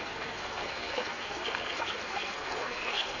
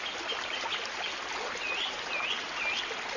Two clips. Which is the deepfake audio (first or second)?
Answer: first